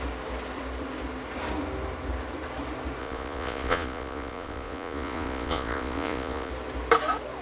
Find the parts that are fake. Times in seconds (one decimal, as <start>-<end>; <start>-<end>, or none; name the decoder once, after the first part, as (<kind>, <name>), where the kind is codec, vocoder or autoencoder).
3.0-6.5 (vocoder, Vocos)